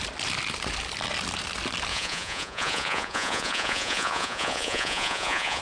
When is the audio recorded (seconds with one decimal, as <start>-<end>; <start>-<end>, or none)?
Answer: 0.0-1.9